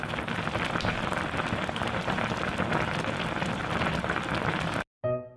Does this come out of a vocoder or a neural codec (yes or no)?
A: no